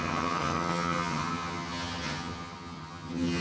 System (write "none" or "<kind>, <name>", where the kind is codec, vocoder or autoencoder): vocoder, HiFi-GAN